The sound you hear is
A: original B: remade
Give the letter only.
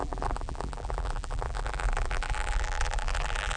B